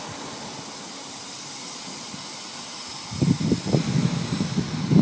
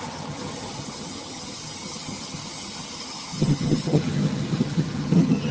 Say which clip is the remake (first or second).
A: second